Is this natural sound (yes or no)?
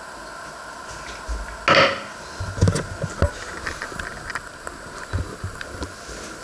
yes